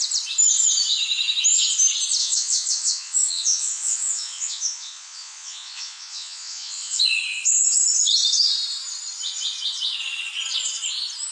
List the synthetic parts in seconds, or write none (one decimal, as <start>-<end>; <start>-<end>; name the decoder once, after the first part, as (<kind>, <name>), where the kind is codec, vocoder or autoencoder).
2.2-7.0 (vocoder, Vocos)